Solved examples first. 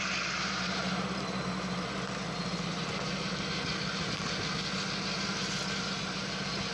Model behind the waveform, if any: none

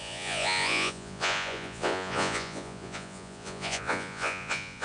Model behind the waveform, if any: vocoder, Vocos